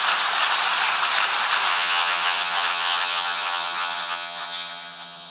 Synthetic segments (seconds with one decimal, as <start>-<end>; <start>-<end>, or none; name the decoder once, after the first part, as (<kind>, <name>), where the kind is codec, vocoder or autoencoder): 1.7-5.3 (vocoder, HiFi-GAN)

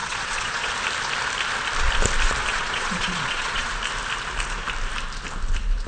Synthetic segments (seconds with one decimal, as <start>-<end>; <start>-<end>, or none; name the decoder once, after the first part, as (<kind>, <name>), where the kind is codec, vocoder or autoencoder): 0.0-0.7 (vocoder, Vocos); 2.5-3.7

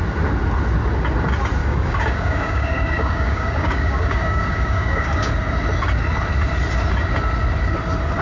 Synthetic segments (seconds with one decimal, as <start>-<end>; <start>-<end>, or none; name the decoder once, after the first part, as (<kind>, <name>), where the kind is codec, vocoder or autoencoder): 1.6-5.3 (codec, DAC)

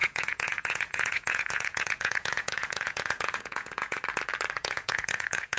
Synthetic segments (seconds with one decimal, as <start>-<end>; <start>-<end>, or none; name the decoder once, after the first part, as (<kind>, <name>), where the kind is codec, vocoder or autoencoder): 0.0-4.0 (vocoder, Vocos); 4.6-5.6

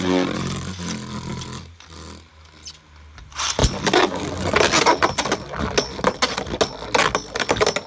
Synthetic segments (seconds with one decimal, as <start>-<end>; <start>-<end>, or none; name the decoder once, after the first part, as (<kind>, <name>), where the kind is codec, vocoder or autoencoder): none